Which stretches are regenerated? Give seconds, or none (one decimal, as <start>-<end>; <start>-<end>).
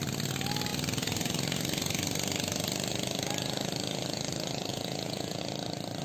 4.7-5.4